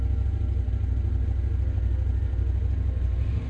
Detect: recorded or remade recorded